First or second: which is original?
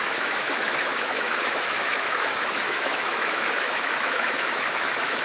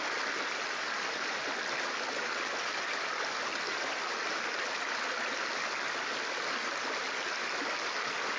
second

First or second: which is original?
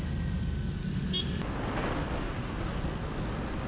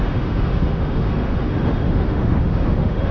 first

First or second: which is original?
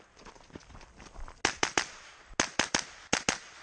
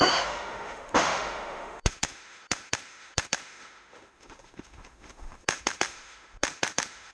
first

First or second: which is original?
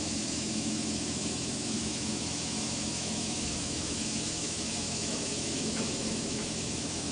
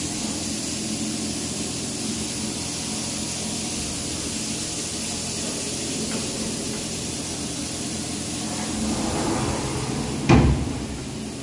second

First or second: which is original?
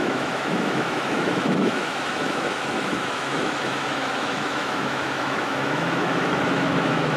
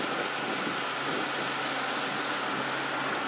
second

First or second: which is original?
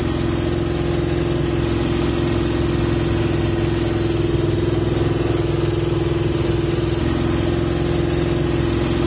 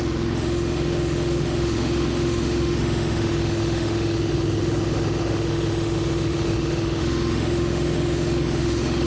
first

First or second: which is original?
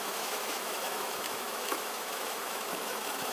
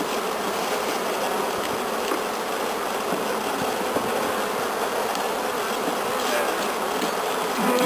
second